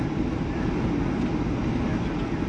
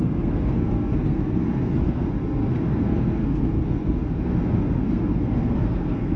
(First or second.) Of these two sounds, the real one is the first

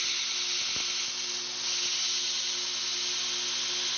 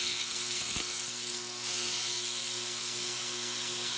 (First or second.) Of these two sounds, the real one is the first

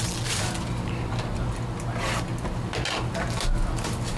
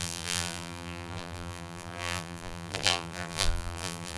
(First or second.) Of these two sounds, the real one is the first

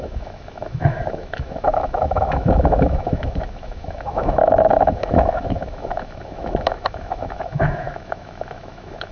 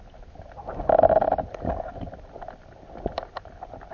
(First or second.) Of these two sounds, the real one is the second